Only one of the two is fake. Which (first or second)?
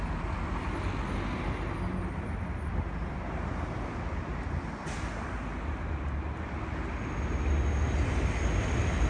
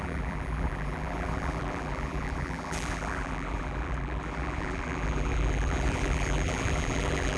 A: second